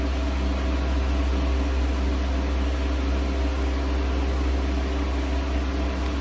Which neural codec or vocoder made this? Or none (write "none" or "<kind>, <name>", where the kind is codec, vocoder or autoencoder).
none